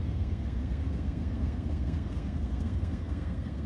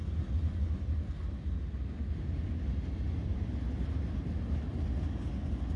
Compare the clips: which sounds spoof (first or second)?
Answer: first